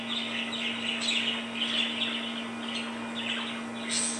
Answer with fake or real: real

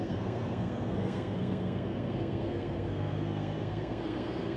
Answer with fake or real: fake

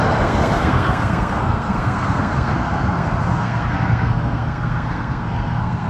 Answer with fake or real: fake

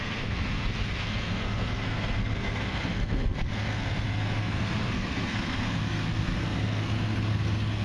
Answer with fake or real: fake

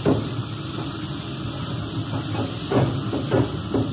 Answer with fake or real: real